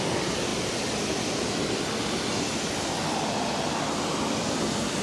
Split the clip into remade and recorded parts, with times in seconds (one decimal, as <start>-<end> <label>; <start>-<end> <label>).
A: 0.0-5.0 recorded

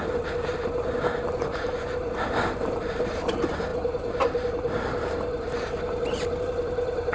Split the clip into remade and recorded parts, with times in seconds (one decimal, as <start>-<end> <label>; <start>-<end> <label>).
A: 0.0-3.7 remade; 3.7-6.4 recorded; 6.4-7.1 remade

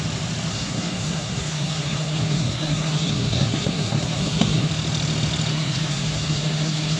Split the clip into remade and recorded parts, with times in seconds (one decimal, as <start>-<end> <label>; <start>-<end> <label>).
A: 0.0-0.5 recorded; 0.5-4.7 remade; 4.7-5.5 recorded; 5.5-7.0 remade

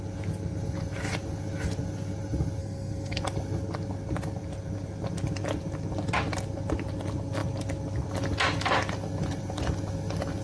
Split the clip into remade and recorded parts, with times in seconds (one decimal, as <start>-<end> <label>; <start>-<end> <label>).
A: 0.0-2.6 recorded; 2.6-3.2 remade; 3.2-10.4 recorded